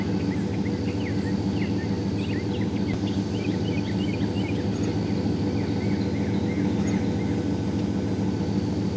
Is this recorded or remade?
recorded